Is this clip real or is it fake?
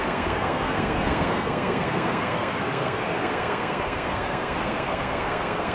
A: fake